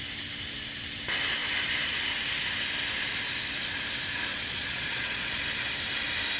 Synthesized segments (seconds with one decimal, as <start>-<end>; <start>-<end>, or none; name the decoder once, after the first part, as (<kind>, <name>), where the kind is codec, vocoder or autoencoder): 4.3-5.4 (vocoder, Vocos)